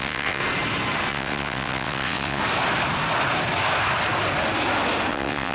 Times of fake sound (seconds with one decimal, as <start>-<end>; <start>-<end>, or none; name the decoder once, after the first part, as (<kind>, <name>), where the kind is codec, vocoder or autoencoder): 0.0-0.4 (vocoder, WaveNeXt); 1.1-2.4; 5.1-5.5